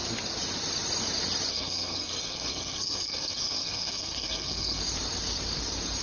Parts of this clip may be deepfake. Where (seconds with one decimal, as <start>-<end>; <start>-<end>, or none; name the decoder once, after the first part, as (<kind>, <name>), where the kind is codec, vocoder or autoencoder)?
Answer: 1.5-4.8 (codec, SNAC)